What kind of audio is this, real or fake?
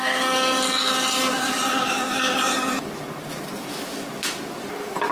real